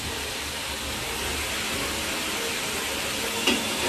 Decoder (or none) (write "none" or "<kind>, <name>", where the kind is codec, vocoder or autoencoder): none